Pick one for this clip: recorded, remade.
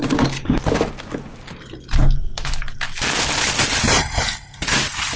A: recorded